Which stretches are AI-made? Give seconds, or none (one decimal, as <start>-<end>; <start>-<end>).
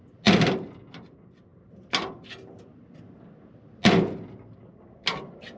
none